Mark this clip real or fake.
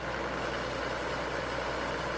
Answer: real